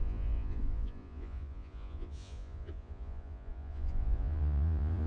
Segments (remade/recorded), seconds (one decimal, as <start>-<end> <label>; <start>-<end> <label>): 0.0-5.1 remade